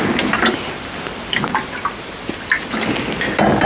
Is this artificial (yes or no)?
no